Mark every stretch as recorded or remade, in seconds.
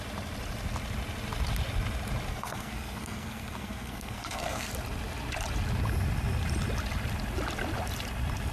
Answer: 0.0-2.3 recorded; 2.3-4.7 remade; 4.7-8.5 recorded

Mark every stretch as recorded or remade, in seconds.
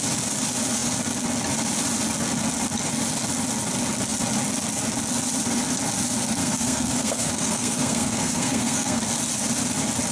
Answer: 0.0-6.4 recorded; 6.4-9.0 remade; 9.0-10.1 recorded